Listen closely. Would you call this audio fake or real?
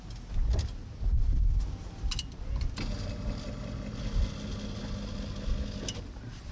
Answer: real